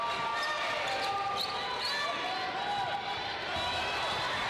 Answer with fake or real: real